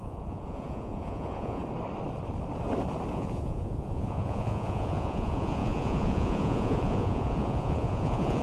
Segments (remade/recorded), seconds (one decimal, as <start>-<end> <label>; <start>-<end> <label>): 0.0-1.6 remade; 1.6-3.1 recorded; 3.1-8.4 remade